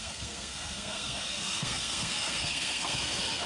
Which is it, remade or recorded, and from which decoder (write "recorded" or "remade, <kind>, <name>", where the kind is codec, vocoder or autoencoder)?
remade, codec, SNAC